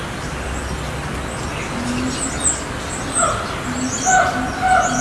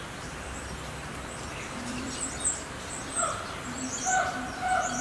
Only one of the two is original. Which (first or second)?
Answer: first